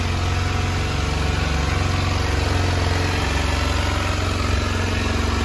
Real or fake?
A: real